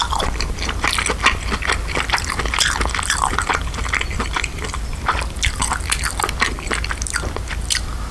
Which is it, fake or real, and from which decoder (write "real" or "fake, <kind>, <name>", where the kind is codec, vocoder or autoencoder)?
real